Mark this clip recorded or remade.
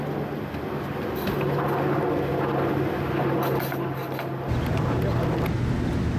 recorded